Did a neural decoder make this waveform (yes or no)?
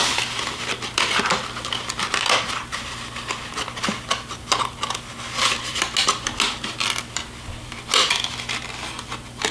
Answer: no